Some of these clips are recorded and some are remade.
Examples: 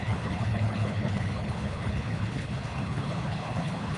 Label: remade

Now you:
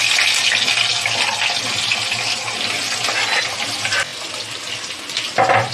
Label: recorded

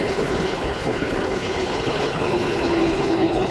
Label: remade